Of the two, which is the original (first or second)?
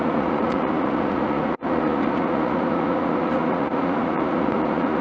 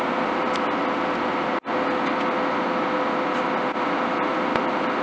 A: second